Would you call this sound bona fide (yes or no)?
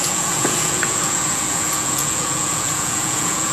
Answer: no